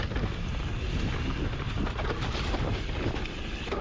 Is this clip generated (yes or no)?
no